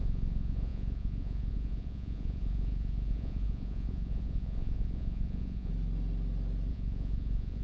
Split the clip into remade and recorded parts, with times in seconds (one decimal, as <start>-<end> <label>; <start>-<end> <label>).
0.0-5.7 remade; 5.7-6.7 recorded; 6.7-7.6 remade